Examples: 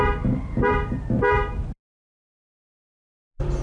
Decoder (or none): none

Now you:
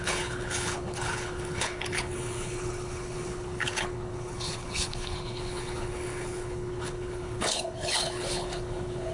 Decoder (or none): codec, HILCodec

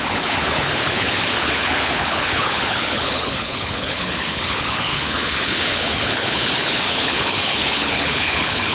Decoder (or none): codec, HILCodec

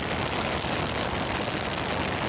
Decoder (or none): none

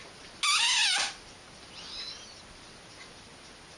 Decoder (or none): none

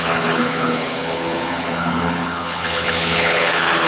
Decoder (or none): codec, HILCodec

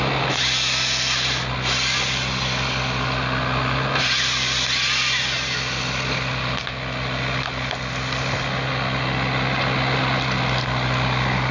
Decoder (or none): none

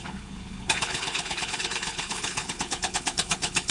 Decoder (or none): codec, HILCodec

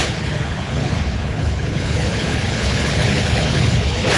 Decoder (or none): codec, HILCodec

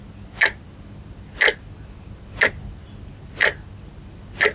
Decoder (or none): none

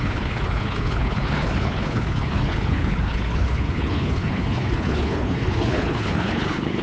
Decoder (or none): codec, HILCodec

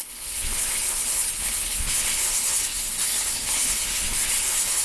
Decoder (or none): codec, HILCodec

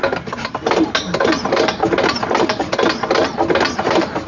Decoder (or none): none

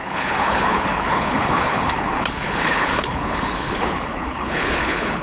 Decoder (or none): codec, HILCodec